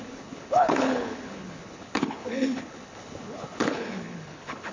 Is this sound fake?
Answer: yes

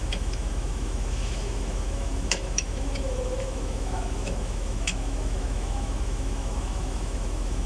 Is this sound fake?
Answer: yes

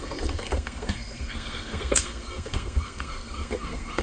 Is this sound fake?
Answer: yes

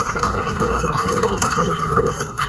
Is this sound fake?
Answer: yes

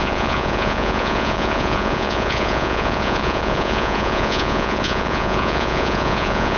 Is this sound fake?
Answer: yes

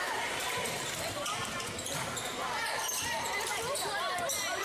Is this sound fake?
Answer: yes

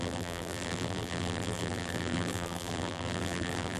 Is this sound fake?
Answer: yes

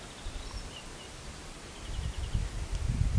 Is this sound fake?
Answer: no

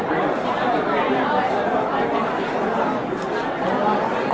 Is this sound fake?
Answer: no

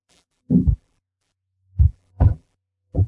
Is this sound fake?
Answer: yes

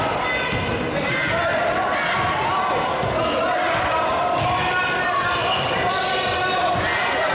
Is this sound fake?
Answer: no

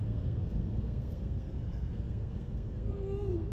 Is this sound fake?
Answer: yes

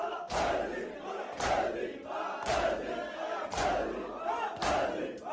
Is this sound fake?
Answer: no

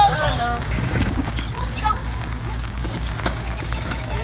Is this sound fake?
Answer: yes